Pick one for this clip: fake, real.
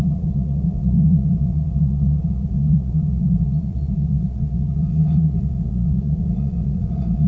fake